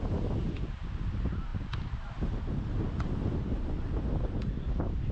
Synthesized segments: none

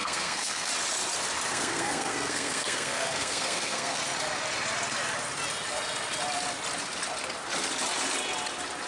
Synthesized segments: 0.0-0.7 (codec, SNAC); 1.5-4.0

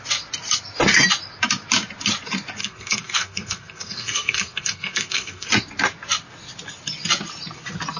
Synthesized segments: 2.6-5.5 (codec, SNAC)

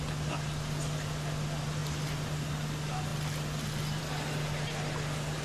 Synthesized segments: none

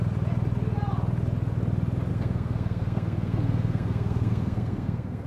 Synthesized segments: 2.1-5.3 (codec, SNAC)

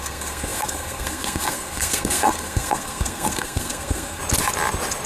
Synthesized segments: 0.0-4.2 (codec, SNAC)